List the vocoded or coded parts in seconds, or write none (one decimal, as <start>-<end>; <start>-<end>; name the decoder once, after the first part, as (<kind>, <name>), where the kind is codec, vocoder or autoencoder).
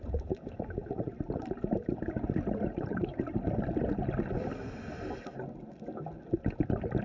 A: 0.0-3.1 (vocoder, BigVGAN v2)